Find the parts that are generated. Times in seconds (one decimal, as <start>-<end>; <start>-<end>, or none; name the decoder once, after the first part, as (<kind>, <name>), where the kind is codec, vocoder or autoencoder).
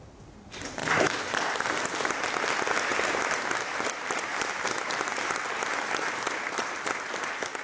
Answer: none